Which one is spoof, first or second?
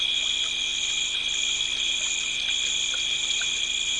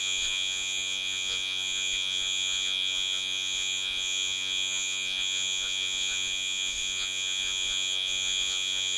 second